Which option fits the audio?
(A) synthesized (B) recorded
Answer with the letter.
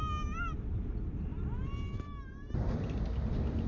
B